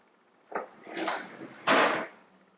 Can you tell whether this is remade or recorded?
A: recorded